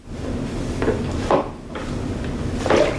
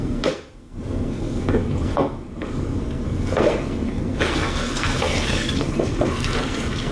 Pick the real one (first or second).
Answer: first